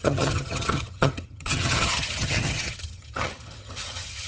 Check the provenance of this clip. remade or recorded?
remade